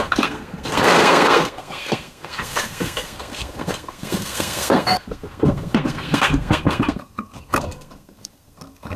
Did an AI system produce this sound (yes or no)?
yes